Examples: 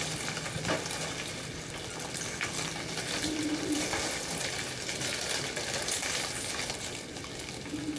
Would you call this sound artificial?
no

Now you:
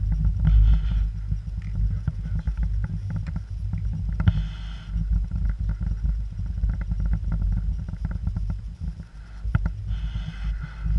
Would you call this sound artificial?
no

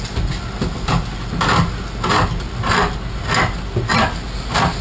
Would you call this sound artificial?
no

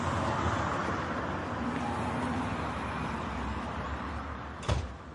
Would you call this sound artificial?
no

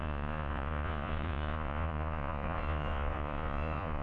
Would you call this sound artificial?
yes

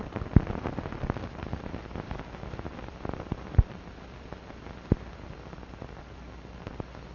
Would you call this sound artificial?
no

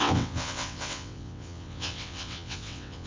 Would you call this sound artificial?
yes